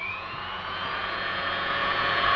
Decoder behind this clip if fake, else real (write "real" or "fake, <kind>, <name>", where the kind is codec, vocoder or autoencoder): fake, vocoder, Vocos